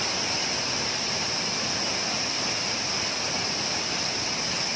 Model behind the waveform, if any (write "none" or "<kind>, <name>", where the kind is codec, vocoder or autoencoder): none